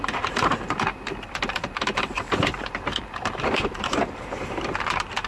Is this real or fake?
fake